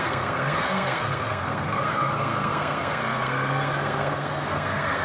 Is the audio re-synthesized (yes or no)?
yes